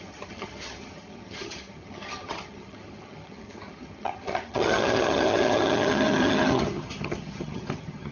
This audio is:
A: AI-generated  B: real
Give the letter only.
A